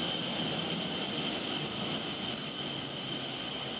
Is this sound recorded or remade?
recorded